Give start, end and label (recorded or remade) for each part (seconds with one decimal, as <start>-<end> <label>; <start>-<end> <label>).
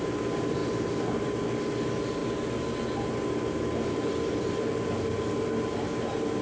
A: 0.0-6.4 recorded